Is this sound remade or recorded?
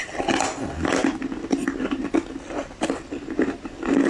recorded